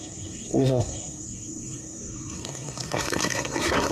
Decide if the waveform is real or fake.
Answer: fake